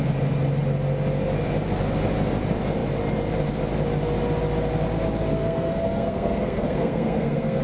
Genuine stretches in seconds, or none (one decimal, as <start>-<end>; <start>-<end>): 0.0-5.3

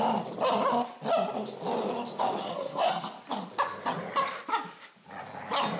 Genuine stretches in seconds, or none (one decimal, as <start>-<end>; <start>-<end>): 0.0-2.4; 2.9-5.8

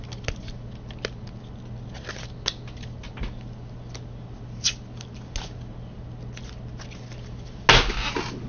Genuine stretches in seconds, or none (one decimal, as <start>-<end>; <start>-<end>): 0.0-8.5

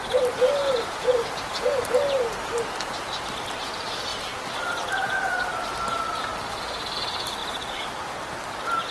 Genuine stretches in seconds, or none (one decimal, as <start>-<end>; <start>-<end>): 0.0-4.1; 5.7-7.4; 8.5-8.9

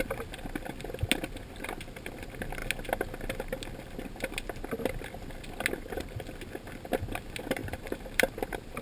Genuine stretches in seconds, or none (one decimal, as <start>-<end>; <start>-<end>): 0.0-7.6

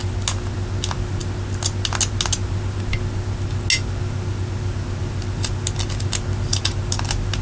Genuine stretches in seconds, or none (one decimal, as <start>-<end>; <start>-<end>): 0.0-7.4